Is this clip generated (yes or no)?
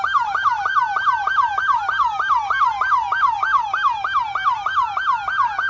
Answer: no